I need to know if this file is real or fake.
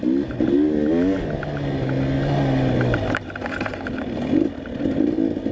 real